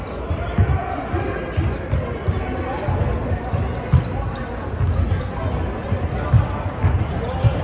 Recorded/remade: recorded